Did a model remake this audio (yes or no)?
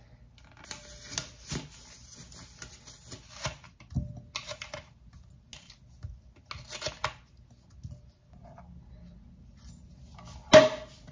no